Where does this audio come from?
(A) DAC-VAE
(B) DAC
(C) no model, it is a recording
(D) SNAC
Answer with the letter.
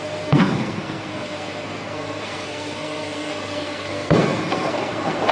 D